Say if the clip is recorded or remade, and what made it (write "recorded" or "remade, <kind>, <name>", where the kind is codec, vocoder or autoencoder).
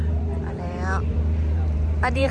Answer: remade, vocoder, BigVGAN v2